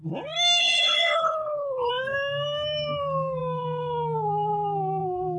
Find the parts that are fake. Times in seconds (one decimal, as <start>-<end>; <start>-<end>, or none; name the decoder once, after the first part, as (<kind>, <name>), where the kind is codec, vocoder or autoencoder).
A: 0.6-1.9 (codec, HILCodec)